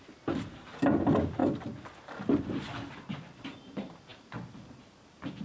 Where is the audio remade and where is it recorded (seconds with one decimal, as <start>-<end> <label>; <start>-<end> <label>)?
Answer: 0.0-5.4 recorded